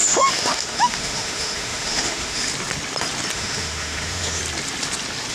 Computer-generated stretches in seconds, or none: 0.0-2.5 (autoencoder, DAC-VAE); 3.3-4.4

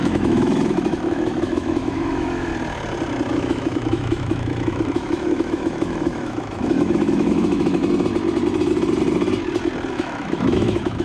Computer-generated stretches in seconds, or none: 0.0-2.5 (autoencoder, DAC-VAE); 3.3-7.8; 9.9-11.0

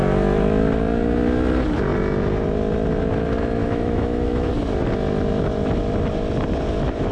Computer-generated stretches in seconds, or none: 3.6-4.5 (autoencoder, DAC-VAE)

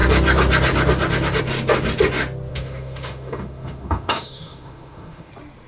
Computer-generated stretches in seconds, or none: 2.5-5.3 (autoencoder, DAC-VAE)

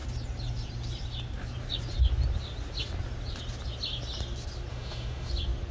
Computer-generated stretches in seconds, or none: 4.7-5.3 (autoencoder, DAC-VAE)

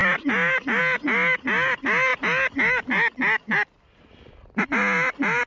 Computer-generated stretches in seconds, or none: none

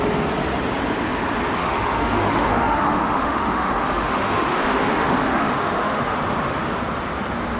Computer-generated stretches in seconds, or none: 1.6-6.2 (autoencoder, DAC-VAE)

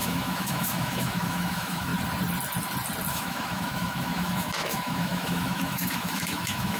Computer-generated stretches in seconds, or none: 0.0-1.9 (autoencoder, DAC-VAE); 3.1-6.8